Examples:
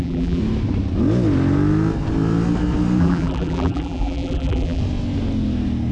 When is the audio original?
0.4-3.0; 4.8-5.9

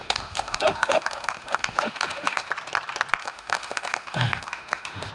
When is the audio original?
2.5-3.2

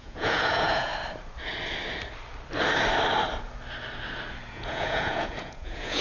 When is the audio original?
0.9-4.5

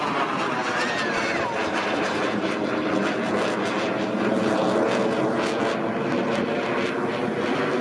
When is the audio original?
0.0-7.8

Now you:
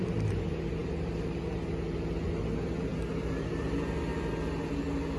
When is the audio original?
0.0-0.8; 1.4-5.2